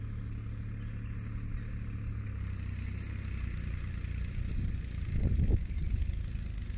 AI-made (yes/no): no